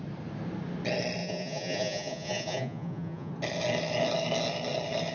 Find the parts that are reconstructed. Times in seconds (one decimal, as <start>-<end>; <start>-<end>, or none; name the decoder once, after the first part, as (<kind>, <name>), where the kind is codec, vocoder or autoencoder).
1.2-3.3 (vocoder, Vocos)